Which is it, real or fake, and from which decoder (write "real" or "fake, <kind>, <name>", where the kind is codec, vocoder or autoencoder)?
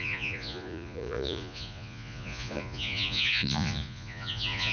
fake, vocoder, Vocos